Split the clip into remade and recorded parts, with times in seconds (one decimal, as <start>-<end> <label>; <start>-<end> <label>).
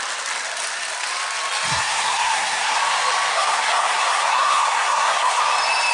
0.0-1.7 recorded; 1.7-2.8 remade; 2.8-3.3 recorded; 3.3-5.4 remade; 5.4-5.9 recorded